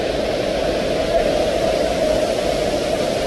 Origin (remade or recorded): recorded